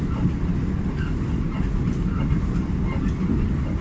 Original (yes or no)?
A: yes